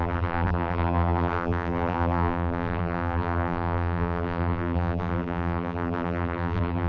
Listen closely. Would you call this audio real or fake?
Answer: fake